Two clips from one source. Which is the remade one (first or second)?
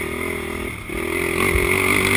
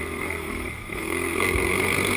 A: second